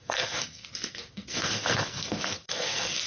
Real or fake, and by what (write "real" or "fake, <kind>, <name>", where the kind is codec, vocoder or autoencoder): fake, codec, SNAC